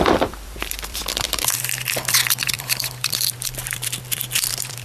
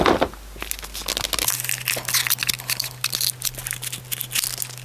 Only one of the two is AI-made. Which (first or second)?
first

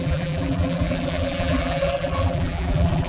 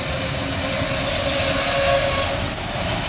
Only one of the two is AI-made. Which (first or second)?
first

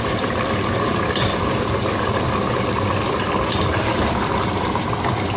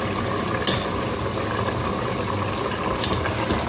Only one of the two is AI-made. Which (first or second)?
first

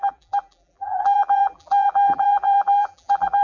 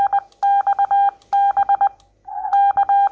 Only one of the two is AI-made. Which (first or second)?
first